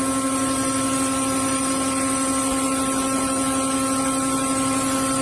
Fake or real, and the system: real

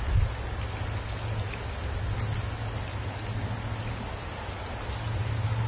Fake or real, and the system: real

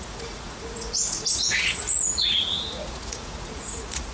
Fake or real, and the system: fake, vocoder, Vocos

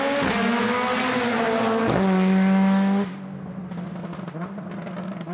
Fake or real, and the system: real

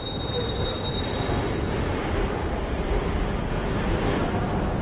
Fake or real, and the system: real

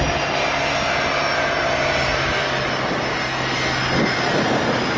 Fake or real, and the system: real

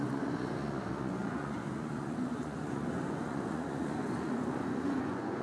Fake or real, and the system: fake, vocoder, Vocos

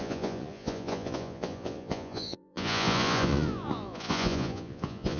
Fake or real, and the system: fake, vocoder, Vocos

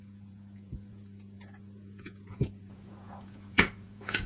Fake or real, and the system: fake, vocoder, Vocos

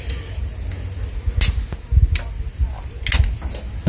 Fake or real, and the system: real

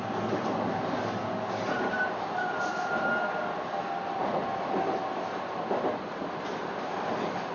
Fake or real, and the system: real